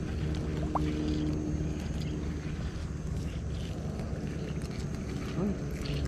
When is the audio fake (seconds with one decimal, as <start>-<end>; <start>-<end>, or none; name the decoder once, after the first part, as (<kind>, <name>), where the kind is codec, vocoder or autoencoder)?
2.8-3.4 (codec, DAC)